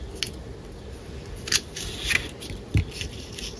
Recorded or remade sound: recorded